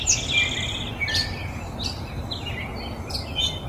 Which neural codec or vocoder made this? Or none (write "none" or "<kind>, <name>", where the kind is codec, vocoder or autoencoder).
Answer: none